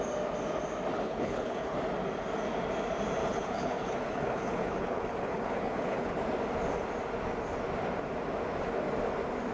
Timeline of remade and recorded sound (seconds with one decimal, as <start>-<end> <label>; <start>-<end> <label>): 0.0-0.9 recorded; 0.9-1.8 remade; 1.8-3.2 recorded; 3.2-6.1 remade; 6.1-9.5 recorded